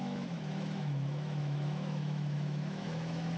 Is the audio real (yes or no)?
no